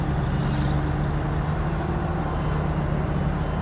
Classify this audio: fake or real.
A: real